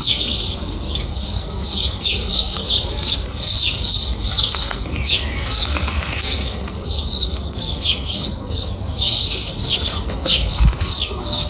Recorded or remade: remade